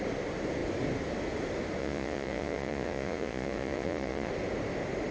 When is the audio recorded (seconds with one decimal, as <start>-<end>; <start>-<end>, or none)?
0.0-1.8; 4.3-5.1